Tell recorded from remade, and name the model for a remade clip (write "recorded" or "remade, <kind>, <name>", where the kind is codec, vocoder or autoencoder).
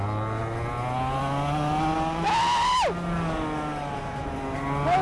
recorded